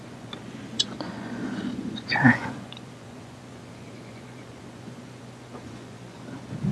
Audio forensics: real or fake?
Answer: fake